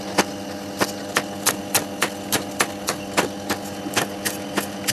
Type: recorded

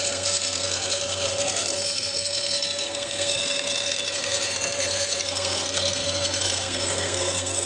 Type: remade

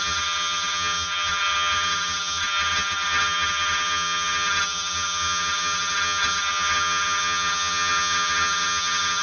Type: remade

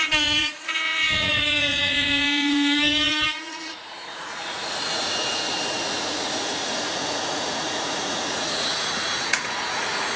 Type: remade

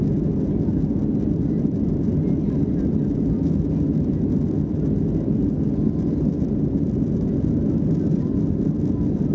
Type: recorded